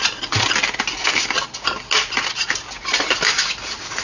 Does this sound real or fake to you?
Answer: real